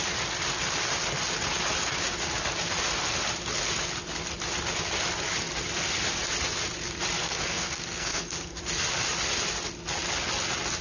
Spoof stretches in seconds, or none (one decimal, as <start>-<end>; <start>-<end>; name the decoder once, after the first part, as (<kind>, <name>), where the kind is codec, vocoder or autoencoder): 7.2-8.6 (codec, SNAC)